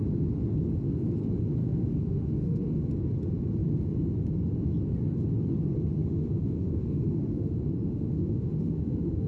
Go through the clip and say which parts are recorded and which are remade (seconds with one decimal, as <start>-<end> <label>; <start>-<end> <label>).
0.0-1.6 recorded; 1.6-2.8 remade; 2.8-6.0 recorded; 6.0-9.3 remade